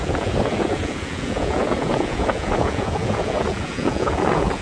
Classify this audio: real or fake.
fake